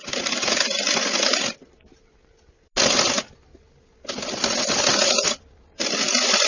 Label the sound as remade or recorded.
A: recorded